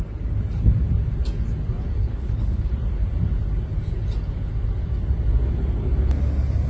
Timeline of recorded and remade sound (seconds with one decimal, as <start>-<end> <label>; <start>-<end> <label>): 0.0-2.0 recorded; 2.0-2.7 remade; 2.7-6.7 recorded